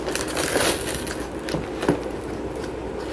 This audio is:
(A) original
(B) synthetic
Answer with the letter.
A